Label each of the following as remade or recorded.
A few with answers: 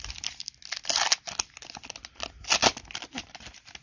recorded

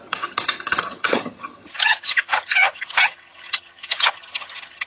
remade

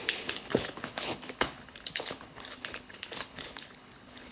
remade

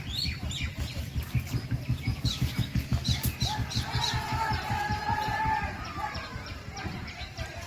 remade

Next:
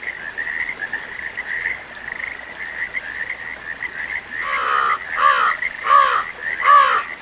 recorded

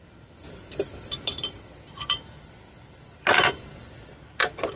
remade